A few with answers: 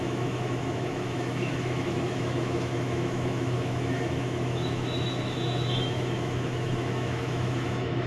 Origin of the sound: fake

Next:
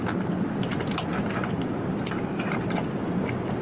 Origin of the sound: real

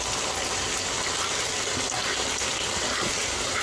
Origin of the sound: real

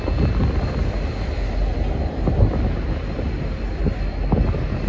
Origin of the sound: real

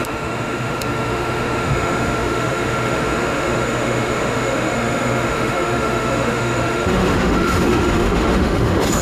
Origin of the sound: fake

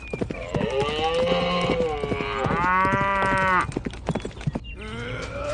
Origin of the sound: real